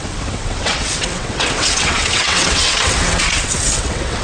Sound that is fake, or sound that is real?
fake